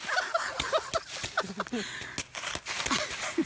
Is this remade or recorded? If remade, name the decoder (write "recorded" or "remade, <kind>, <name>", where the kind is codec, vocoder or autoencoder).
recorded